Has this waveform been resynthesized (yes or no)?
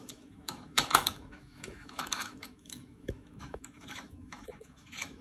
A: yes